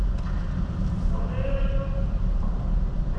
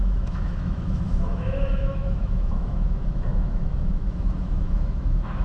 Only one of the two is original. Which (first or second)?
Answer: first